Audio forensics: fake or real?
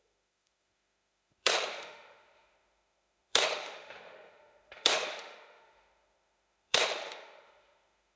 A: fake